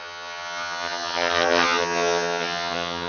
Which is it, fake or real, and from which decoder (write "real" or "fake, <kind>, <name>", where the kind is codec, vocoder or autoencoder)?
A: fake, vocoder, HiFi-GAN